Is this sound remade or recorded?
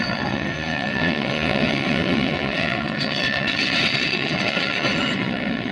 remade